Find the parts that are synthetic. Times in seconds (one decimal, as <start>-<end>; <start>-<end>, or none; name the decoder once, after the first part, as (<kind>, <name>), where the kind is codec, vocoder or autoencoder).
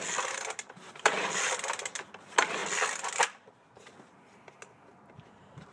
0.8-1.5 (vocoder, BigVGAN v2)